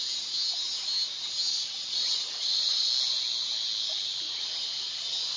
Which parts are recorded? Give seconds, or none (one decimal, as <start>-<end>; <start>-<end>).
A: 0.0-1.5; 2.9-5.4